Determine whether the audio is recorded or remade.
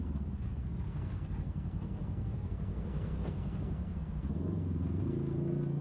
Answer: remade